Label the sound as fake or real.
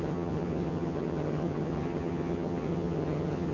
fake